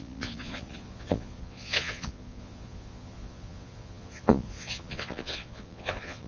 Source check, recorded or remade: remade